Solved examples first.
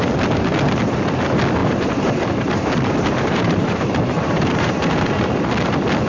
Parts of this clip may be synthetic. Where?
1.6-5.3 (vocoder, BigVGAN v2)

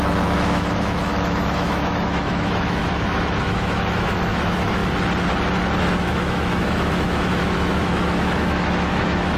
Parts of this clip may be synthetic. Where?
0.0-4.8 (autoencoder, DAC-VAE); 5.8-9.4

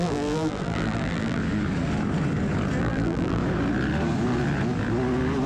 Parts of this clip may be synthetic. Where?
0.0-1.4 (vocoder, BigVGAN v2); 2.8-3.4

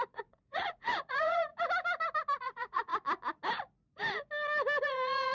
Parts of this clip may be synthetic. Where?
0.0-1.5 (vocoder, Vocos); 2.4-2.9; 4.8-5.3